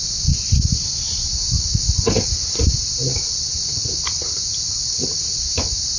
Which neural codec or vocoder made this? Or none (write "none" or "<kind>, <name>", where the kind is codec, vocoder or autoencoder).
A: none